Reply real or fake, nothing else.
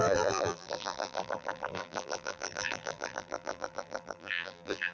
fake